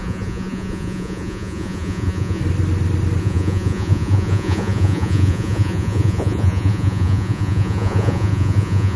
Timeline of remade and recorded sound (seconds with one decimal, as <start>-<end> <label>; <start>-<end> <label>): 0.0-2.4 remade; 2.4-3.2 recorded; 3.2-9.0 remade